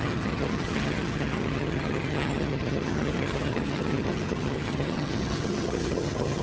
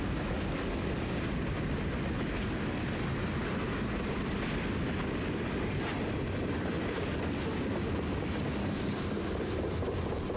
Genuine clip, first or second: second